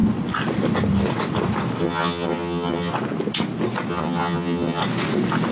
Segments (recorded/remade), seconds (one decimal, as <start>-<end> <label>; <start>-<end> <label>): 0.0-1.8 recorded; 1.8-2.9 remade; 2.9-3.9 recorded; 3.9-4.8 remade; 4.8-5.5 recorded

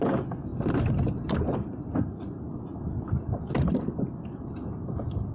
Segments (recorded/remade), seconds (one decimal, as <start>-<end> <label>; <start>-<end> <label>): 0.0-5.3 recorded

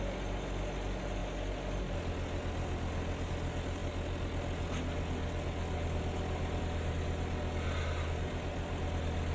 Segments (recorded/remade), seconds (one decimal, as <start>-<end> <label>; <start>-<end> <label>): 0.0-9.3 recorded